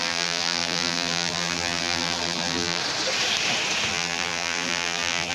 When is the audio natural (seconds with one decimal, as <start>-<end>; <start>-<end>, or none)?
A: 2.8-3.9